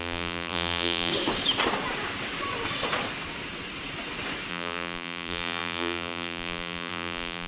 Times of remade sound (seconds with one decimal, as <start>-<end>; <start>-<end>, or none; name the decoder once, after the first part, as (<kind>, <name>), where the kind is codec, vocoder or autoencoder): 0.0-1.1 (vocoder, BigVGAN v2); 4.5-7.5